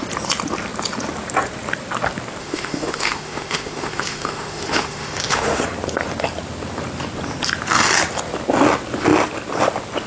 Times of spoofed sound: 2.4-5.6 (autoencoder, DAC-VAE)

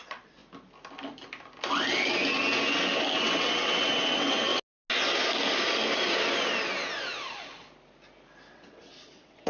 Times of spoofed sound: 0.0-0.4 (vocoder, WaveNeXt); 3.2-4.5; 8.5-9.5